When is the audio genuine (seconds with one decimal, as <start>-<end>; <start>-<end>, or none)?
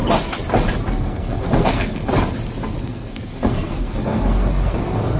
0.0-0.9; 2.0-2.8